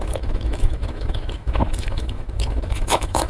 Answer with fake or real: fake